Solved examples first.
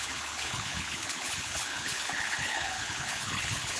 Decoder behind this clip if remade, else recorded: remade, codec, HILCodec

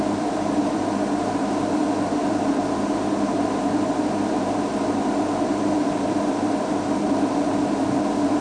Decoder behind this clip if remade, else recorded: recorded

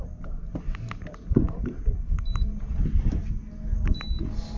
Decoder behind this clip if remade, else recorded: recorded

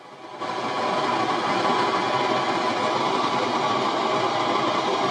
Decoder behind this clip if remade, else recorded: recorded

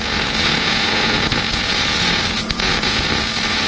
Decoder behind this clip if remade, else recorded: remade, vocoder, Vocos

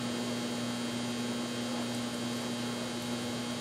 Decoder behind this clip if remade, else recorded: recorded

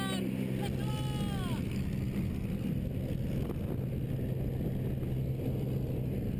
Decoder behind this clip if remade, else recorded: recorded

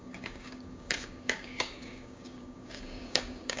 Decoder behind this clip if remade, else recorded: remade, codec, DAC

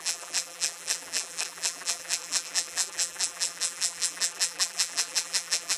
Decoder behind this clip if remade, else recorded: remade, vocoder, BigVGAN v2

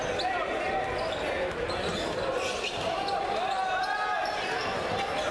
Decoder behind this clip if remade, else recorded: recorded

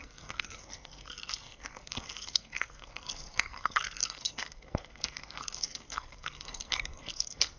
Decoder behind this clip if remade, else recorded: remade, codec, SNAC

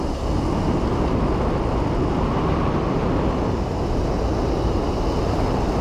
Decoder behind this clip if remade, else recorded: recorded